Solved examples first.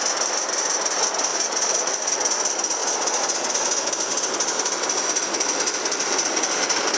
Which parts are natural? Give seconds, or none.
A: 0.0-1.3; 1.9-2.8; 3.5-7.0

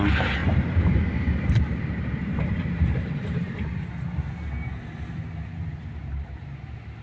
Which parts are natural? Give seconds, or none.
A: 0.0-0.4; 3.5-7.0

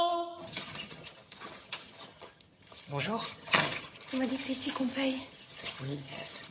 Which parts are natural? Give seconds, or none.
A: 4.7-5.2

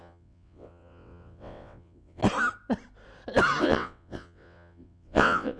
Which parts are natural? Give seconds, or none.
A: 2.2-3.6

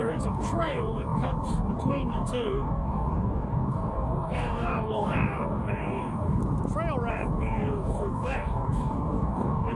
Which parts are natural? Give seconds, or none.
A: 6.4-7.1

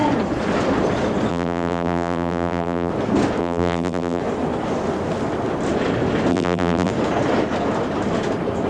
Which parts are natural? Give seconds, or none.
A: 0.0-1.3; 2.9-3.4; 4.2-6.3; 6.9-8.7

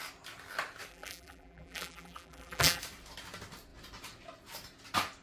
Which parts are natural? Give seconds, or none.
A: 0.0-0.9; 2.8-5.2

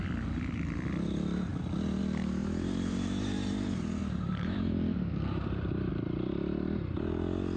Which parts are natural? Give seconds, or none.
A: 0.0-2.4; 5.9-7.6